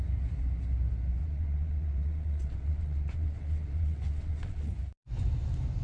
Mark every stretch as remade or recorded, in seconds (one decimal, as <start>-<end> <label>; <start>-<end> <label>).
0.0-1.2 recorded; 1.2-4.7 remade; 4.7-5.8 recorded